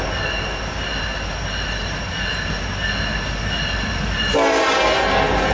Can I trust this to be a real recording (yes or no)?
yes